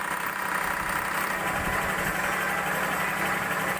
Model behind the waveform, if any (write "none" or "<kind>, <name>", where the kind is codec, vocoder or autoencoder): none